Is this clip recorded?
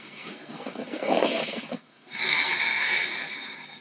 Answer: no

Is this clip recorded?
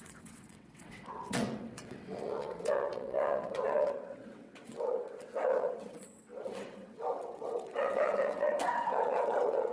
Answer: no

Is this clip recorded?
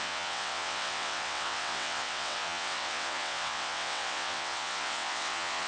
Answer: no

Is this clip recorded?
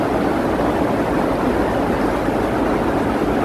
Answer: yes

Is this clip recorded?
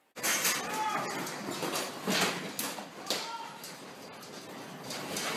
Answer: yes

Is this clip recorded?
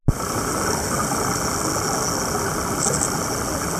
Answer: yes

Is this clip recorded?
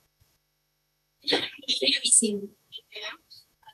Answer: no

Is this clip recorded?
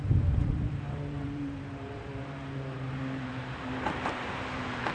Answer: no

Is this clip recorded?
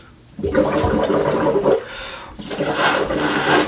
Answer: yes